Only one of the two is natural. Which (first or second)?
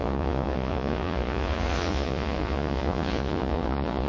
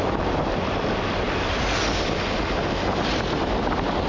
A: second